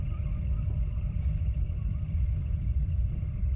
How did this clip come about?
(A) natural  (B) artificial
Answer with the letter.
A